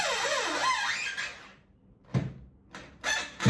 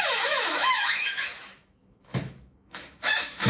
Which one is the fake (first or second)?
second